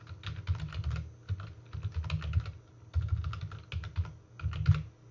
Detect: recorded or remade recorded